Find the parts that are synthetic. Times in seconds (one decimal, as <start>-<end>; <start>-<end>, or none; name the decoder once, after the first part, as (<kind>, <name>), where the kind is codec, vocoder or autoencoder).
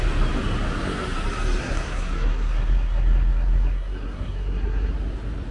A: 1.6-4.9 (codec, SNAC)